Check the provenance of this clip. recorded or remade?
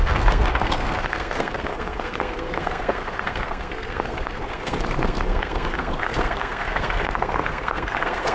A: remade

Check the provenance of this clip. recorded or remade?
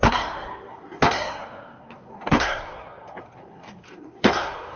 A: remade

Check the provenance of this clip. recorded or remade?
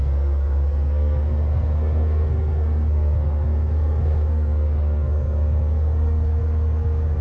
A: remade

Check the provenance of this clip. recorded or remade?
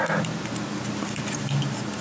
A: recorded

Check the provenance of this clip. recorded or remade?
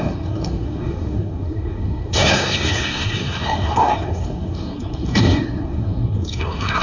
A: remade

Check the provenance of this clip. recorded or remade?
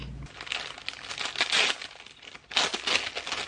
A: recorded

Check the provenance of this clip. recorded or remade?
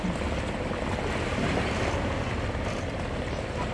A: recorded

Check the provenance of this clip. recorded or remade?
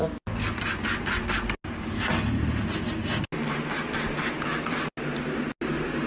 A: recorded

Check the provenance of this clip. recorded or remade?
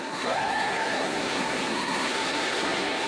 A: remade